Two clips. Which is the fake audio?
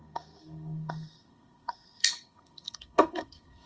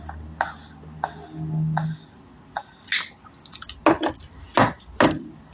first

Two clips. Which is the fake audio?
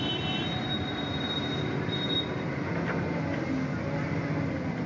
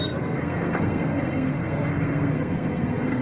second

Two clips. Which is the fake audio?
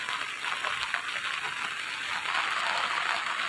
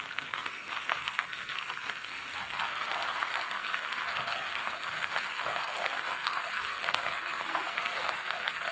second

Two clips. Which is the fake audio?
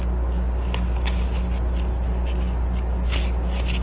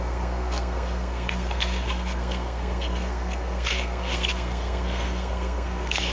second